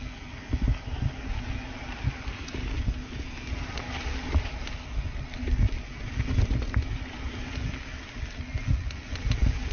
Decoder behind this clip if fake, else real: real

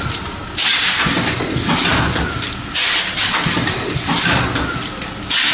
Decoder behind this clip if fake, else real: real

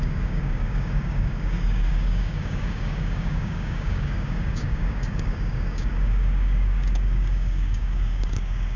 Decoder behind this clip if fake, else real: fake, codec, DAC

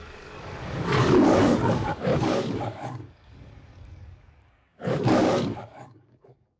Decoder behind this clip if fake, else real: fake, codec, DAC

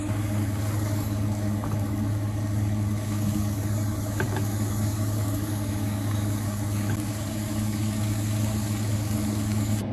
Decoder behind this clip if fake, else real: fake, codec, DAC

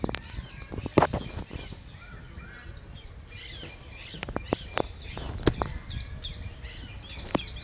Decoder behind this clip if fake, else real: real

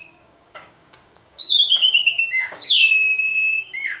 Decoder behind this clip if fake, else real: fake, codec, DAC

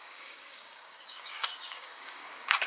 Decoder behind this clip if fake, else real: fake, codec, DAC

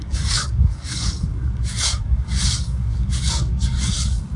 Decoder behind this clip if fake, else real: fake, codec, DAC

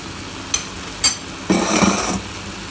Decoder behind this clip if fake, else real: real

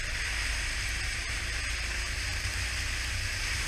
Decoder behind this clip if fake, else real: real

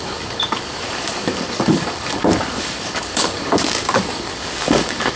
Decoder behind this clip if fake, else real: fake, codec, DAC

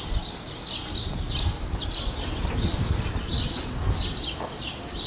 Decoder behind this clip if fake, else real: real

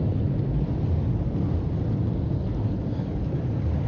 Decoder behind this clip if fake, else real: real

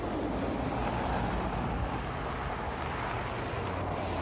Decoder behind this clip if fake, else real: real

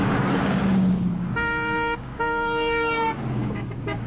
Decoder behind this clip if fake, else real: fake, codec, DAC